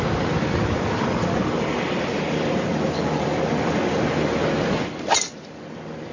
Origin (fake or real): real